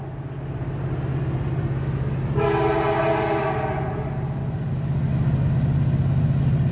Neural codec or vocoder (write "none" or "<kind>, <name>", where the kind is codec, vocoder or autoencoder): none